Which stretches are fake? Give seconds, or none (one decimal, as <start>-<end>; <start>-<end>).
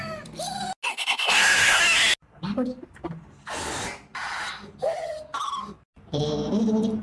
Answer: 0.9-1.8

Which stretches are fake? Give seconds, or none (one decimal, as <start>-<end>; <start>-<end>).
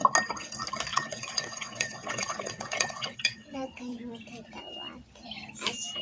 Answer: 0.9-4.0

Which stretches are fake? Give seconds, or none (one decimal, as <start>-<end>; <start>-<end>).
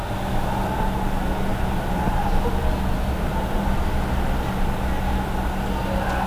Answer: none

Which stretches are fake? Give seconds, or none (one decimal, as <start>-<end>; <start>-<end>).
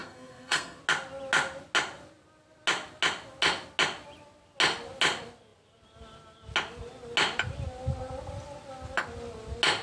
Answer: 0.0-0.8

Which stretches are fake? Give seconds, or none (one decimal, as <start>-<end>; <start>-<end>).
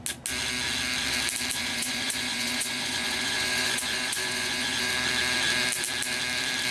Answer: 1.6-4.9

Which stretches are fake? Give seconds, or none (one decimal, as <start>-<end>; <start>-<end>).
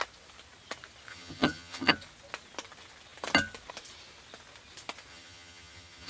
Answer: 1.1-1.9; 5.1-6.1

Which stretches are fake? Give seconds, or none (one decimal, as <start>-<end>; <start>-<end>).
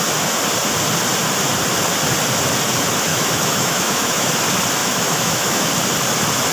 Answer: 3.1-4.3; 4.8-5.7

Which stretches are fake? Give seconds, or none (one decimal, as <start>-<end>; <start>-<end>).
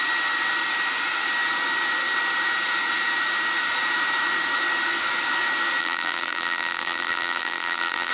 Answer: 5.8-8.1